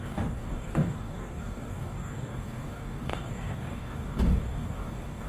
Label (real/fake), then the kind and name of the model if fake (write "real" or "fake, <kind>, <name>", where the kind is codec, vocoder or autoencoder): fake, codec, DAC